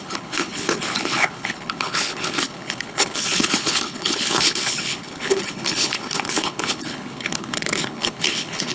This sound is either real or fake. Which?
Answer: fake